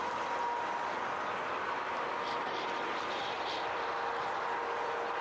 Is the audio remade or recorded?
recorded